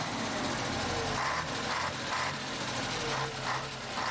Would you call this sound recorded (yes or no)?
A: yes